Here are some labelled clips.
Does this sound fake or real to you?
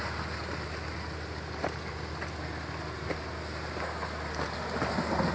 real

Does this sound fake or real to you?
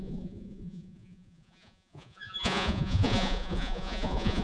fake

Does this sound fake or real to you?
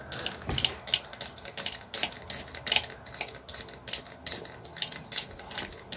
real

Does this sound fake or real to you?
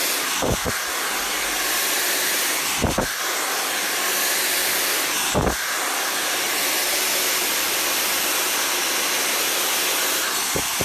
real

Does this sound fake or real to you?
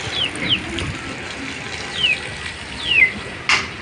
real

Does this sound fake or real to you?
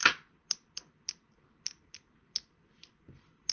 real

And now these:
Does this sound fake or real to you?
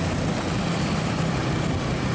real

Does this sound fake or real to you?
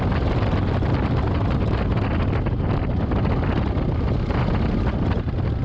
real